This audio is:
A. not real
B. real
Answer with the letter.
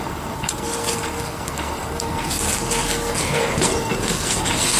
A